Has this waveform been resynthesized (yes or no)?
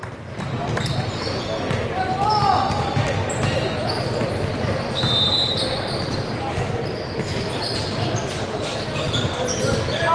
no